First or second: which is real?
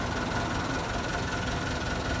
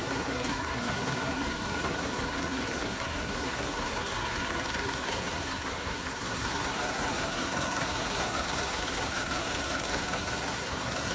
first